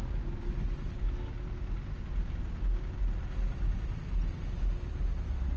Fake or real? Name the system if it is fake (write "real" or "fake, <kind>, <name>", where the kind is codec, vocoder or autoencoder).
real